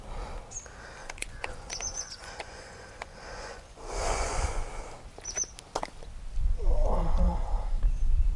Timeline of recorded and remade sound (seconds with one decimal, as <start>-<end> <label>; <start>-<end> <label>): 0.0-1.0 recorded; 1.0-4.7 remade; 4.7-6.8 recorded; 6.8-7.8 remade; 7.8-8.4 recorded